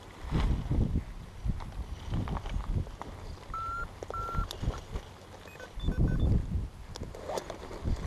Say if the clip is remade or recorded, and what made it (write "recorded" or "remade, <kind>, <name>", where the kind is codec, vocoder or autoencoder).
recorded